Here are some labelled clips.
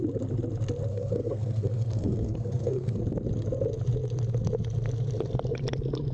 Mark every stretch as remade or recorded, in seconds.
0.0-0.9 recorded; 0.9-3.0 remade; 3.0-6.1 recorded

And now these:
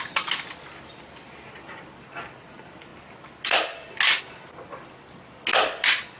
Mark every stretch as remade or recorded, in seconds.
0.0-6.2 recorded

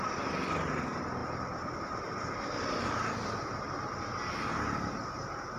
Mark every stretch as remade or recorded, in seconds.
0.0-5.6 recorded

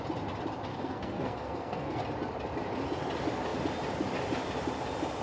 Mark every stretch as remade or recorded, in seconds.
0.0-0.7 recorded; 0.7-2.0 remade; 2.0-5.2 recorded